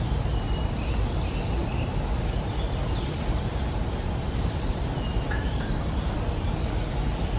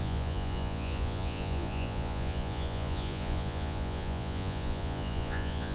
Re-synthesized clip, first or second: second